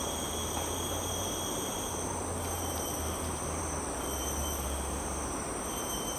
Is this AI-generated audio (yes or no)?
yes